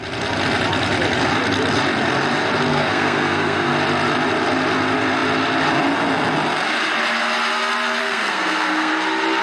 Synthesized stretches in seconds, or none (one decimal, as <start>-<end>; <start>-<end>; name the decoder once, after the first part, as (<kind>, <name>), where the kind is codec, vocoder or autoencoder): 2.7-3.7 (codec, SNAC); 8.0-8.9

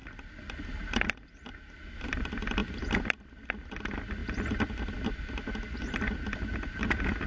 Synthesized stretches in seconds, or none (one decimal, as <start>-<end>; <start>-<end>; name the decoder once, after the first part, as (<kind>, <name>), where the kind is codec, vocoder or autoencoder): none

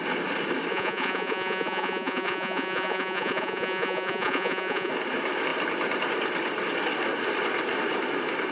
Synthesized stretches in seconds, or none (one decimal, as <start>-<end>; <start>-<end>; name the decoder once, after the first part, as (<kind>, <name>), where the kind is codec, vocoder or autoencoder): 0.7-4.9 (vocoder, Vocos)